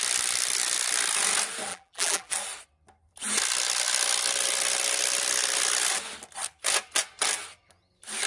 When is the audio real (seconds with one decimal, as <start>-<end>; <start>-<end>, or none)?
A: 0.0-1.7; 2.3-8.3

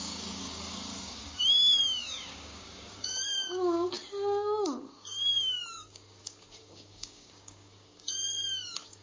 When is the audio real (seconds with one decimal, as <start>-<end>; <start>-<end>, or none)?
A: none